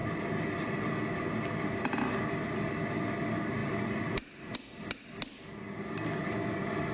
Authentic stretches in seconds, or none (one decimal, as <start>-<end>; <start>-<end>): 0.0-6.9